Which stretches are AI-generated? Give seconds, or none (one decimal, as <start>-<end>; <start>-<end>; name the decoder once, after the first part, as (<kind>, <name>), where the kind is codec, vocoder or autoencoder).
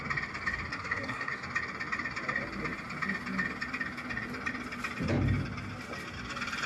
0.7-1.3 (codec, SNAC)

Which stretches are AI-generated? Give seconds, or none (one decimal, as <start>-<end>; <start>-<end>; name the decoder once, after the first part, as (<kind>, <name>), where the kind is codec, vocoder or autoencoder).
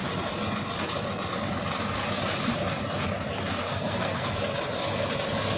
3.7-4.4 (codec, SNAC)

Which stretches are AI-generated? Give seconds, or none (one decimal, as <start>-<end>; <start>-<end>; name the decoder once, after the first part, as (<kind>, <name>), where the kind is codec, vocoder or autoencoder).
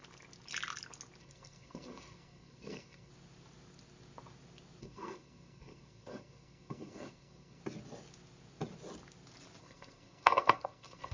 1.2-3.1 (codec, SNAC); 4.8-7.6; 9.6-11.1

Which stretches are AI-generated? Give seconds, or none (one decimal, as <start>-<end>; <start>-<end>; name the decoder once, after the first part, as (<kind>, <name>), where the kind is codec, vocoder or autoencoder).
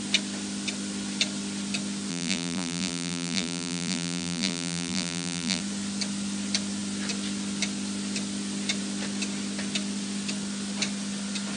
2.1-5.6 (vocoder, BigVGAN v2)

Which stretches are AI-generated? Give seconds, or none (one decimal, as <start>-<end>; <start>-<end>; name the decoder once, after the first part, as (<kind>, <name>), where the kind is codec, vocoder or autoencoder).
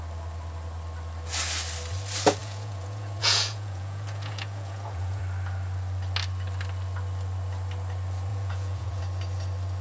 2.4-5.2 (vocoder, Vocos); 8.3-9.0